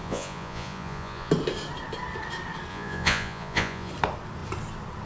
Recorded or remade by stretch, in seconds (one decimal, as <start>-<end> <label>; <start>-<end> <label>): 0.0-1.3 remade; 1.3-2.7 recorded; 2.7-3.9 remade; 3.9-5.1 recorded